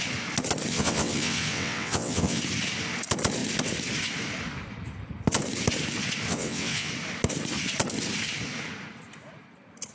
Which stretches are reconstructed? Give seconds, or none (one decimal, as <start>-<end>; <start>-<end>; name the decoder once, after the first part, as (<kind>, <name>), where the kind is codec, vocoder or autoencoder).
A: 0.7-2.4 (vocoder, WaveNeXt); 6.3-6.9